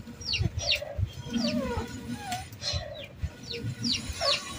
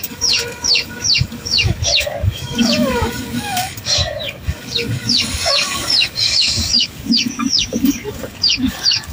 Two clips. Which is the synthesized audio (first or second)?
second